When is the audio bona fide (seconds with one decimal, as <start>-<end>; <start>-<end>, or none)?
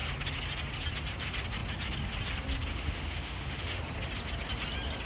0.0-2.7; 3.8-5.1